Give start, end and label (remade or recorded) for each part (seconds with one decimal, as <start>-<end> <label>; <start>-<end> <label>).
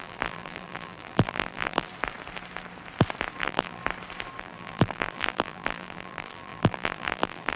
0.0-1.9 remade; 1.9-3.4 recorded; 3.4-3.8 remade; 3.8-4.4 recorded; 4.4-7.6 remade